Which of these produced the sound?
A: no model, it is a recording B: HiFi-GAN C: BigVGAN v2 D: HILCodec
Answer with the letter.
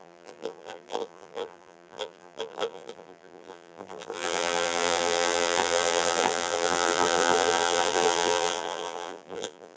C